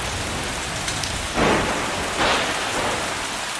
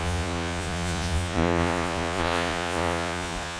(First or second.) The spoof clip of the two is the second